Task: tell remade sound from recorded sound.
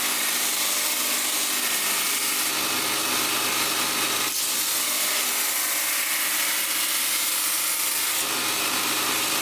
recorded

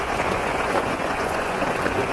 remade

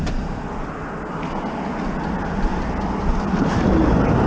recorded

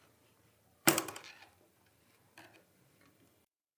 remade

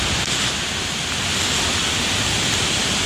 recorded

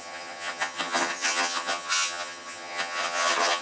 remade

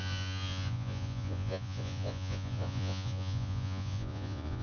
remade